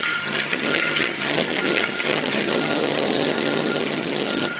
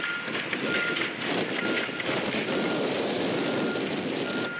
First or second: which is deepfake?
first